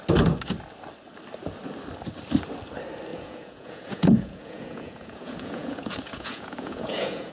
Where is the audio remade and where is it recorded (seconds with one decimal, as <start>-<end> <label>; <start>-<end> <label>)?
0.0-3.1 recorded; 3.1-7.3 remade